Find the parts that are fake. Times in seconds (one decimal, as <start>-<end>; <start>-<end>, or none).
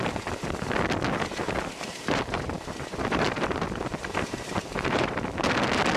1.9-5.5